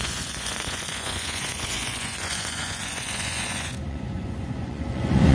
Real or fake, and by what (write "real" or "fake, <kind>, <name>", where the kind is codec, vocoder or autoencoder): fake, vocoder, Vocos